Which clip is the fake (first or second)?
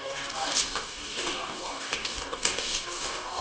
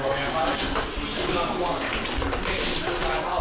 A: first